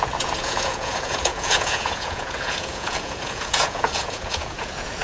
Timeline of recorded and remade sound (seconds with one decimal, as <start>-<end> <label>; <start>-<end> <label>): 0.0-5.0 remade